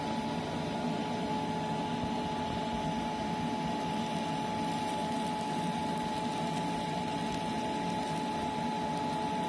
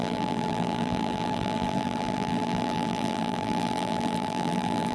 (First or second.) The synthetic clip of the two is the second